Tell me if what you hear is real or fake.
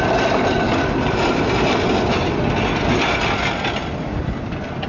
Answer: real